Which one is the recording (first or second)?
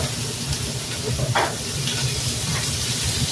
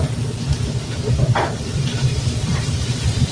first